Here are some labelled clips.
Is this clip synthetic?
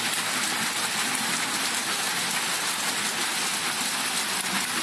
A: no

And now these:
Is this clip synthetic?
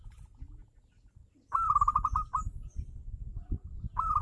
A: no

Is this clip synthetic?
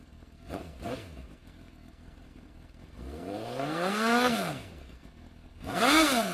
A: yes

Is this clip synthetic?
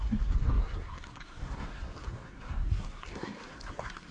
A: yes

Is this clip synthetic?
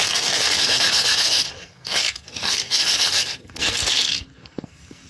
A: yes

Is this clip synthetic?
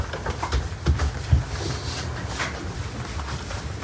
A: no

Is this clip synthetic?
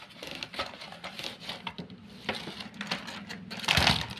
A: no